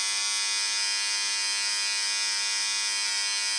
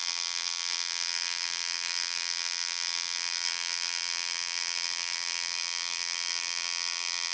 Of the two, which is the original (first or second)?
first